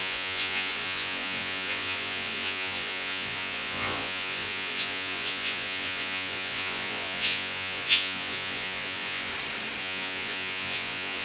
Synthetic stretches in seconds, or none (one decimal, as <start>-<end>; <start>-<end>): 0.0-9.3; 9.8-11.2